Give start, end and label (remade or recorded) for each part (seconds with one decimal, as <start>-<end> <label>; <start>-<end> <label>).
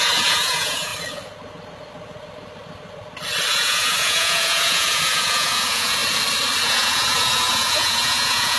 0.0-0.9 remade; 0.9-3.5 recorded; 3.5-6.0 remade; 6.0-6.6 recorded; 6.6-8.6 remade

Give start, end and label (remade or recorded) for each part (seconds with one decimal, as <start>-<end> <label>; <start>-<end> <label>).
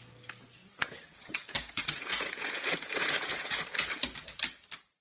0.0-0.6 recorded; 0.6-3.6 remade; 3.6-5.0 recorded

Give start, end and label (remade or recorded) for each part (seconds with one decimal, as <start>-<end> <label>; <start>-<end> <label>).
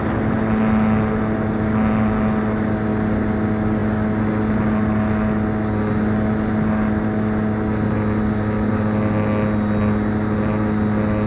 0.0-11.3 recorded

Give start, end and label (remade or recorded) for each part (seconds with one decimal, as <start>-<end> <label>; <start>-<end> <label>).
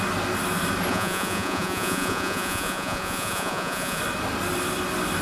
0.0-0.9 recorded; 0.9-4.0 remade; 4.0-5.2 recorded